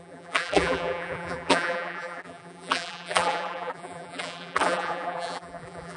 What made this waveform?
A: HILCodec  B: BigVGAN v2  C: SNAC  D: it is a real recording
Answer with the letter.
B